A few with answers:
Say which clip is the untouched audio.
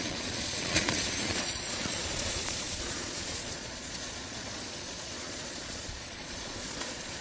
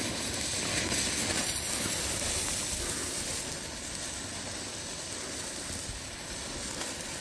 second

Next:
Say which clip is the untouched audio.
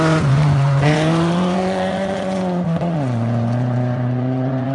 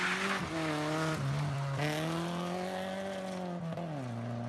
second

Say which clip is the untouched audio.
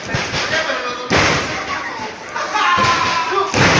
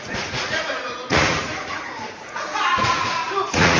first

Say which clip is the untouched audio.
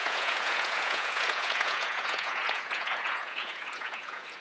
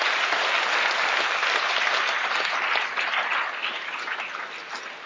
second